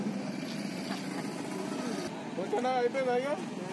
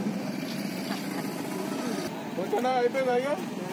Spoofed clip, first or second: second